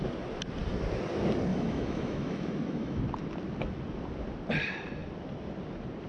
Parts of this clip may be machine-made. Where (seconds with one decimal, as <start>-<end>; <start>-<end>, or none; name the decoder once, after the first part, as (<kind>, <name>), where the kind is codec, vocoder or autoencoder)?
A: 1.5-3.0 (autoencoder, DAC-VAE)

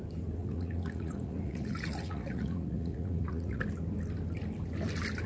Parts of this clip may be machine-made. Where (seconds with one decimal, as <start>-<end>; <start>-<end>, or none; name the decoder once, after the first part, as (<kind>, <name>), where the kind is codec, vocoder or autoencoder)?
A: 0.4-3.6 (vocoder, Vocos)

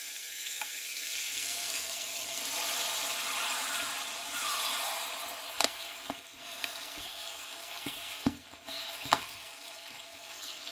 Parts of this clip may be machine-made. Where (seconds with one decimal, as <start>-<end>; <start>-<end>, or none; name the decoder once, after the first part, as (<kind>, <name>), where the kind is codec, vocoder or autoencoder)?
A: 0.0-2.4 (codec, SNAC); 5.5-10.7